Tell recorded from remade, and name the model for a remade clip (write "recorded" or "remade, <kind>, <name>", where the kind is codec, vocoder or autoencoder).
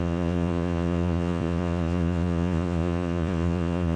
remade, vocoder, Vocos